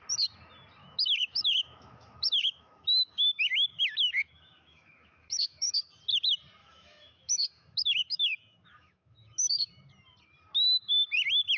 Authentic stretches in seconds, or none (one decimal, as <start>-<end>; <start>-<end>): 0.0-0.8; 5.9-6.6; 9.8-11.6